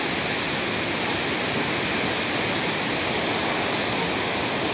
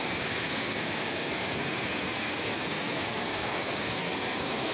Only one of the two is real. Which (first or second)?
first